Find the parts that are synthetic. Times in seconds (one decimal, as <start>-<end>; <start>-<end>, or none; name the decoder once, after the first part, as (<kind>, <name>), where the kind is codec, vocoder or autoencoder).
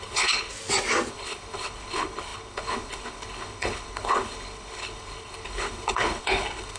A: 0.0-0.5 (codec, HILCodec); 1.1-6.8